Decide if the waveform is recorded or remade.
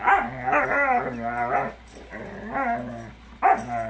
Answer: recorded